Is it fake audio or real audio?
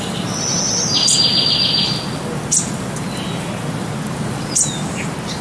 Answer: real